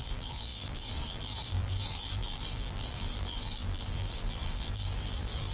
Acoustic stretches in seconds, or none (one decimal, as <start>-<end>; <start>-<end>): none